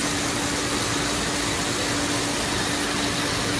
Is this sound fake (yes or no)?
no